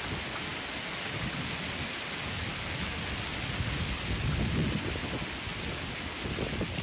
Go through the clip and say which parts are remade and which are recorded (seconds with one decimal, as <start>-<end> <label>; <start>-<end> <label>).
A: 0.0-6.8 recorded